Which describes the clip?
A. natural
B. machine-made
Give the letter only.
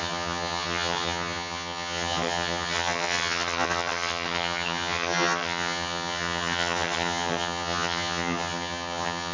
B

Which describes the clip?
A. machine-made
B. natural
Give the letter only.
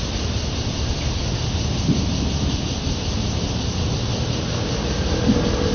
B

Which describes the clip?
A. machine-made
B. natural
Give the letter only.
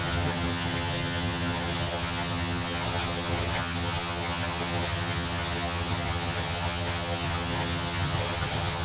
A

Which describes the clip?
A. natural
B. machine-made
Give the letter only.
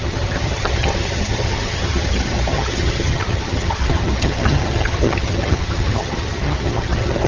B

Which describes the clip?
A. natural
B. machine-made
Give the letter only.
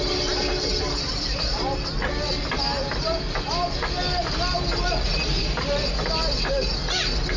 A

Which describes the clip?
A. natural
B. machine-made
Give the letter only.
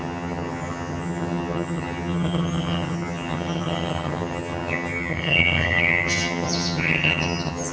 B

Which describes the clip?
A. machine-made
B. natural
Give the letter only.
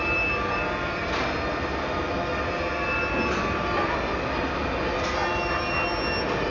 B